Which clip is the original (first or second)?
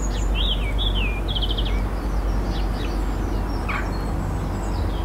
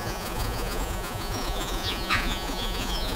first